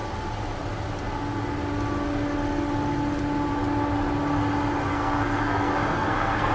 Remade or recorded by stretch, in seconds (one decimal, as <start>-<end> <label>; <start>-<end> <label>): 0.0-4.9 recorded; 4.9-6.5 remade